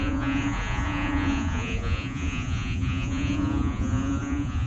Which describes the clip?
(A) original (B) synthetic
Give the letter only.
B